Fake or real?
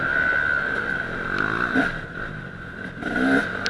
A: real